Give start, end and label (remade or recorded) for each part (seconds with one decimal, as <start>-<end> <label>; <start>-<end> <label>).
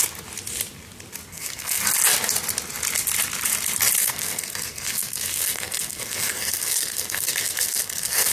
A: 0.0-1.3 recorded; 1.3-1.8 remade; 1.8-4.0 recorded; 4.0-8.3 remade